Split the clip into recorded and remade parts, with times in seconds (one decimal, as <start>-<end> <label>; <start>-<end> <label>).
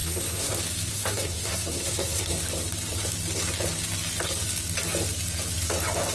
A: 0.0-0.5 remade; 0.5-0.9 recorded; 0.9-2.4 remade; 2.4-6.1 recorded